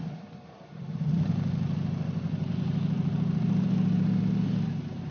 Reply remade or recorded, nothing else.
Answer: remade